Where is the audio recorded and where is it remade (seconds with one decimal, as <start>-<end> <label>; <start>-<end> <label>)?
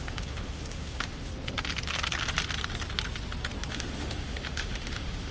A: 0.0-1.3 remade; 1.3-3.7 recorded; 3.7-5.3 remade